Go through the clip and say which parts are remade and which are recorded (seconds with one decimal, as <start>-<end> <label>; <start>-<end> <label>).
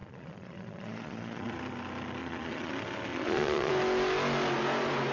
0.0-1.6 remade; 1.6-2.2 recorded; 2.2-2.7 remade; 2.7-3.1 recorded; 3.1-3.7 remade; 3.7-5.1 recorded